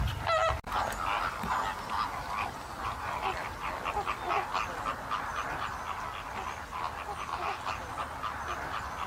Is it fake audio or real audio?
real